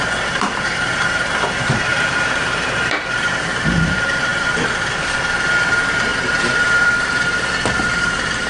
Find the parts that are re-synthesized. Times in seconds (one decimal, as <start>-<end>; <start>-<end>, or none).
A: 0.0-8.5